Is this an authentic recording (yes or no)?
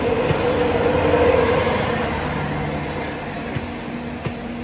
yes